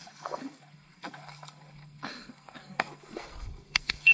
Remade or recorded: remade